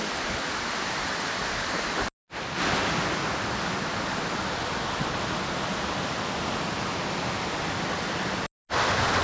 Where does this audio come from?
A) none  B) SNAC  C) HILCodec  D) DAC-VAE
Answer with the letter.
A